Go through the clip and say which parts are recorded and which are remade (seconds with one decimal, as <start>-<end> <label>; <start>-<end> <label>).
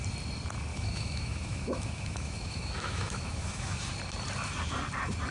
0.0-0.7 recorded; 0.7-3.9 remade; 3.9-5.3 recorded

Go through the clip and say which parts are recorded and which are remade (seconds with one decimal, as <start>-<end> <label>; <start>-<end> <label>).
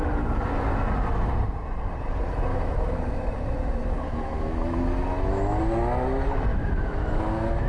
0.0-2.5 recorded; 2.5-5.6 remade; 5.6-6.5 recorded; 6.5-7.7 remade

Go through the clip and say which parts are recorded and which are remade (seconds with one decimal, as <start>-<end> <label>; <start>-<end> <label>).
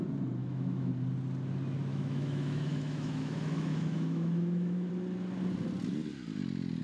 0.0-0.4 recorded; 0.4-0.9 remade; 0.9-1.9 recorded; 1.9-4.9 remade; 4.9-6.8 recorded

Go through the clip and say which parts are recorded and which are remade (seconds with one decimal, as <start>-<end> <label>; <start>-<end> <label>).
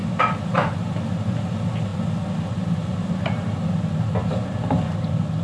0.0-5.4 recorded